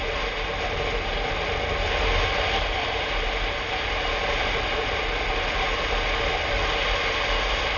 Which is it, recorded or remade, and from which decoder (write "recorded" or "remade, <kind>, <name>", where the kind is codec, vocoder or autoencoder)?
recorded